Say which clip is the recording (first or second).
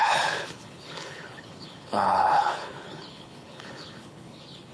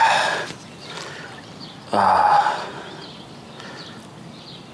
second